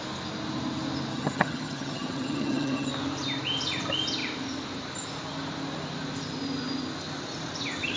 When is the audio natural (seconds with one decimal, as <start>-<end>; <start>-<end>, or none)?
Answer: 0.0-1.1; 2.9-8.0